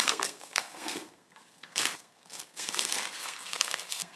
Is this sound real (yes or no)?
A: no